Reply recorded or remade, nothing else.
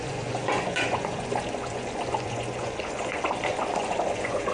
remade